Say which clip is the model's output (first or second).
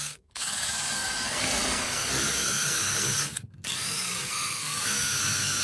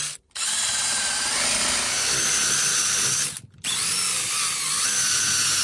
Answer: first